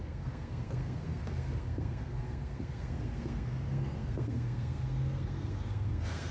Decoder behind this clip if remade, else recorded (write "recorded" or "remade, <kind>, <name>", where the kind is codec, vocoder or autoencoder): remade, codec, SNAC